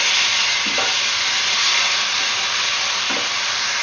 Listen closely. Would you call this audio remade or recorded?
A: recorded